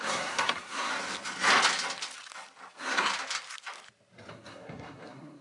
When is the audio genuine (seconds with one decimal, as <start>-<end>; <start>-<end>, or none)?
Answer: 0.9-2.7; 3.1-4.3